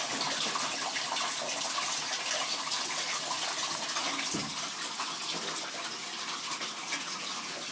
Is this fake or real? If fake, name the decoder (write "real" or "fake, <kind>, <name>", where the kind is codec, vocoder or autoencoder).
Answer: real